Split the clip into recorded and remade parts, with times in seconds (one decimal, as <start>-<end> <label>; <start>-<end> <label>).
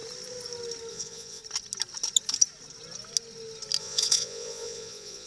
0.0-0.9 recorded; 0.9-1.4 remade; 1.4-3.8 recorded; 3.8-5.3 remade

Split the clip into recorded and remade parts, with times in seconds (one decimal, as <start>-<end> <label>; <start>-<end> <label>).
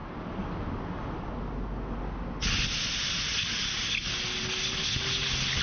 0.0-5.6 recorded